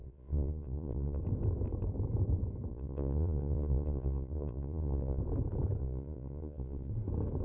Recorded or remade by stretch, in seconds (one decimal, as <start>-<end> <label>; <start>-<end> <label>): 0.0-1.2 remade; 1.2-2.7 recorded; 2.7-5.2 remade; 5.2-5.8 recorded; 5.8-6.9 remade; 6.9-7.4 recorded